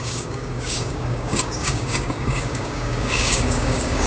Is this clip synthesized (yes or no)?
yes